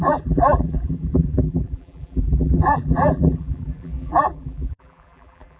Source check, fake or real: fake